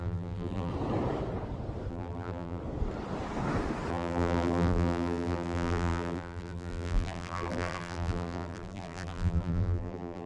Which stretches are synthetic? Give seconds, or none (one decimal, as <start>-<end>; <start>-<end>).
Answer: 0.0-0.7; 1.9-2.6; 3.9-10.3

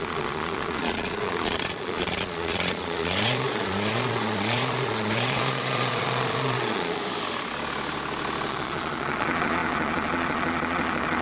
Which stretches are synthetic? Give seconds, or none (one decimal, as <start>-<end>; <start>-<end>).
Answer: 0.0-7.0; 8.5-11.2

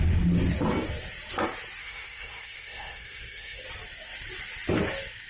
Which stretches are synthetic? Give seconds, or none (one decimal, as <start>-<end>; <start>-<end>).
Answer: 1.8-3.6

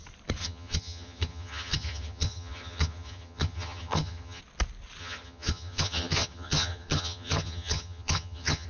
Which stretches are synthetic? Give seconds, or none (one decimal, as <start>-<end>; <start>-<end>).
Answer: 0.4-4.4; 5.0-8.7

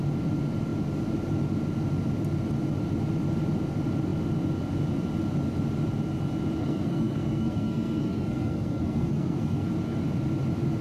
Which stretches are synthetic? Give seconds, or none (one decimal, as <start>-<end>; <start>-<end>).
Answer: 6.6-9.7

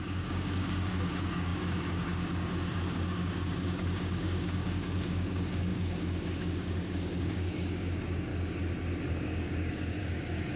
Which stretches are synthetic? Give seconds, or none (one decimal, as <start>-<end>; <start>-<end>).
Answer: 0.0-8.3; 9.1-10.6